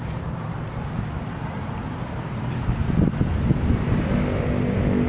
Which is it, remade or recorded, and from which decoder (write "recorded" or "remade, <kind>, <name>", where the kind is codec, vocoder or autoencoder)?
recorded